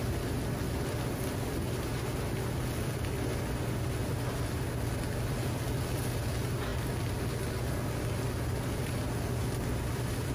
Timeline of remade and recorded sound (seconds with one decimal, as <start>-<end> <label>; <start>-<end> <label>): 0.0-10.3 recorded